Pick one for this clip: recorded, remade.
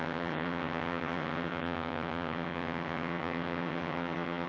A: remade